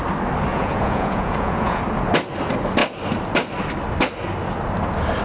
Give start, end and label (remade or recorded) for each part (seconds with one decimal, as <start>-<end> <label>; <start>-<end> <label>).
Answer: 0.0-0.5 recorded; 0.5-1.8 remade; 1.8-5.2 recorded